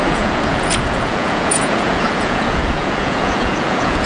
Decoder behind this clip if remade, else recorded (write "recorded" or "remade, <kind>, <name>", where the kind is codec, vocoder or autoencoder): remade, vocoder, Vocos